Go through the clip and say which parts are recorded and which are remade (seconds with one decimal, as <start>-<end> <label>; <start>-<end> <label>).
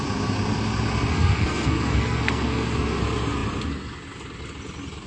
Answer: 0.0-1.1 recorded; 1.1-3.0 remade; 3.0-5.1 recorded